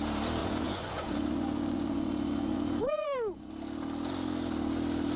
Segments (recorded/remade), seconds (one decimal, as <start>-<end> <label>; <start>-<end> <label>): 0.0-0.4 recorded; 0.4-3.5 remade; 3.5-5.2 recorded